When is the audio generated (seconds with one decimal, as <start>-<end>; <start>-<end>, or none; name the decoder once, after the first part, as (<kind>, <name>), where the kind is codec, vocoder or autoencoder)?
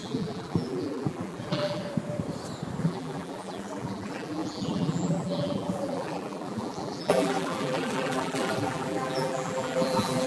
0.0-1.8 (vocoder, BigVGAN v2); 2.8-10.3